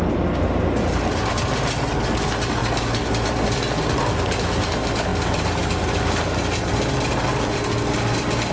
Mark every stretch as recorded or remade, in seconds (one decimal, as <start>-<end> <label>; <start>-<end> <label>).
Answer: 0.0-8.5 recorded